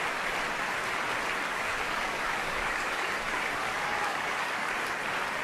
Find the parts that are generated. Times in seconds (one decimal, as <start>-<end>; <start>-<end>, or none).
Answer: 1.5-4.7